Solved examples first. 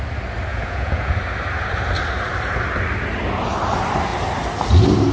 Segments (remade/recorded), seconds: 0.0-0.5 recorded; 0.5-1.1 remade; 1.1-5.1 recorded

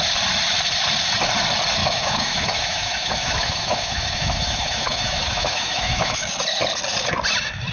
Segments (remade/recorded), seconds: 0.0-1.8 recorded; 1.8-6.3 remade; 6.3-7.7 recorded

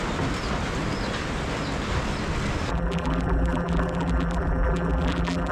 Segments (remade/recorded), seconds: 0.0-2.7 recorded; 2.7-5.5 remade

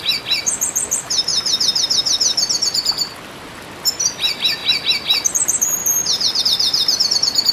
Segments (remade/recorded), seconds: 0.0-1.3 remade; 1.3-4.0 recorded; 4.0-5.8 remade; 5.8-6.4 recorded; 6.4-7.5 remade

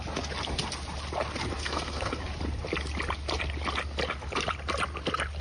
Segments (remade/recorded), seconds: 0.0-1.6 recorded; 1.6-2.2 remade; 2.2-5.4 recorded

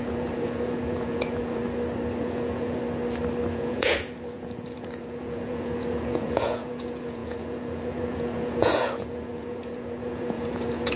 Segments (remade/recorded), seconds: 0.0-1.6 remade; 1.6-2.2 recorded; 2.2-2.8 remade; 2.8-3.5 recorded; 3.5-11.0 remade